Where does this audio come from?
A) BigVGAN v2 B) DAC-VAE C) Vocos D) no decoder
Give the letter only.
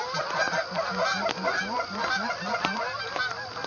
D